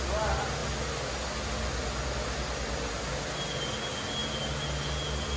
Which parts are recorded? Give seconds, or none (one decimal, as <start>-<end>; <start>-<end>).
0.0-5.4